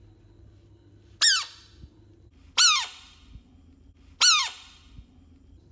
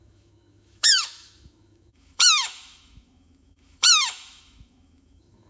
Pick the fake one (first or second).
second